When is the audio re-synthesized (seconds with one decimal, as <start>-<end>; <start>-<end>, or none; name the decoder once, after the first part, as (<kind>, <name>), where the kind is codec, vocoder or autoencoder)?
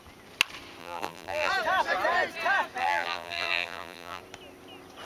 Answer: 0.8-1.5 (vocoder, BigVGAN v2); 2.8-4.2